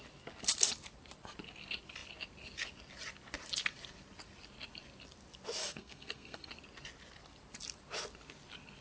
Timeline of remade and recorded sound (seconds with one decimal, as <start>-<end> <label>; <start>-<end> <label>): 0.0-5.6 recorded; 5.6-6.5 remade; 6.5-8.8 recorded